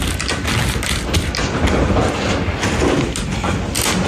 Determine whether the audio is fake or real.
real